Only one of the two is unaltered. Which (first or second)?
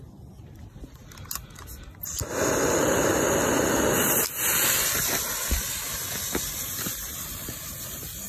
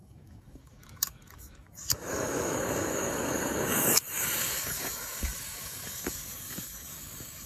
first